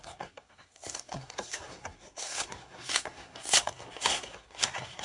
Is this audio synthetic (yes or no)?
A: yes